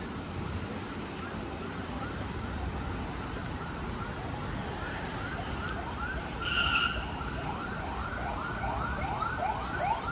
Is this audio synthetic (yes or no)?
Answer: yes